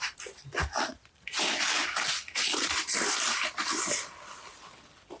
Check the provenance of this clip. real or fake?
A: real